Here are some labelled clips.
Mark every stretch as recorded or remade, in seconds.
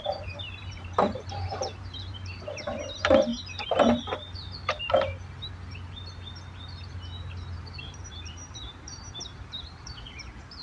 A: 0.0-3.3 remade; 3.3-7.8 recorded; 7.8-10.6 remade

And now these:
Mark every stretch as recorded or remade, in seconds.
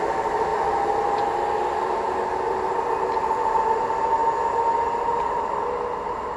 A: 0.0-6.4 remade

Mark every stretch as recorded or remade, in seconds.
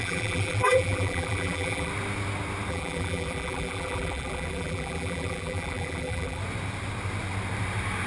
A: 0.0-1.9 remade; 1.9-2.7 recorded; 2.7-6.4 remade; 6.4-8.1 recorded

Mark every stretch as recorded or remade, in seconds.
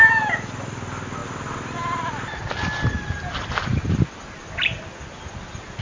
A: 0.0-5.8 recorded